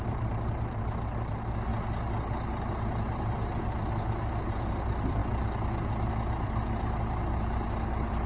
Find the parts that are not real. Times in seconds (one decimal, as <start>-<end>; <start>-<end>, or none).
0.0-1.7; 2.6-5.2; 5.9-8.3